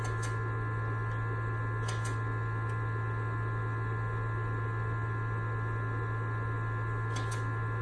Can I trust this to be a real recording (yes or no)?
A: yes